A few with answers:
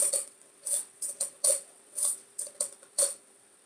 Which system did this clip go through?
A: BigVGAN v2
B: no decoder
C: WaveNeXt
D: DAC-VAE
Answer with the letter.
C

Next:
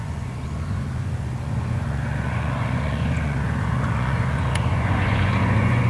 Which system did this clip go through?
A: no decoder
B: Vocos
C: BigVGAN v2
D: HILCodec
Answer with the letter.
B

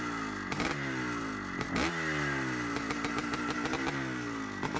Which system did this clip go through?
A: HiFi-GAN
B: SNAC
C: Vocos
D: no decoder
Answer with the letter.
D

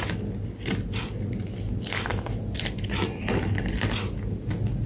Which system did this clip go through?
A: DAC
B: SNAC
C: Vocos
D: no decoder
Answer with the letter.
D